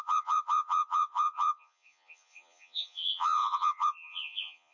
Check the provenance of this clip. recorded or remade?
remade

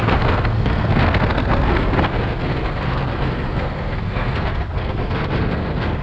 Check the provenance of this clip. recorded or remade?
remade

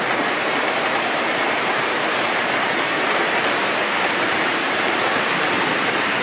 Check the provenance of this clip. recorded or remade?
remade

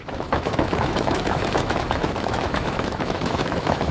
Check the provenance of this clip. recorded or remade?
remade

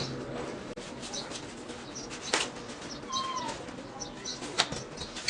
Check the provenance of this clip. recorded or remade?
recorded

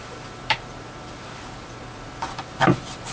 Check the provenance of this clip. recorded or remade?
remade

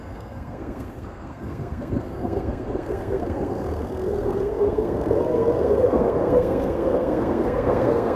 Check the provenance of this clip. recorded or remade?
remade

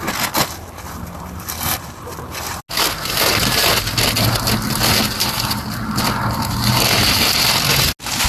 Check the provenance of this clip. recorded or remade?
recorded